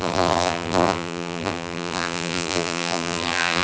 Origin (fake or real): fake